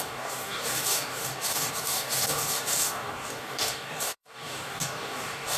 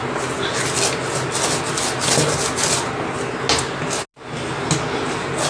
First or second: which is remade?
first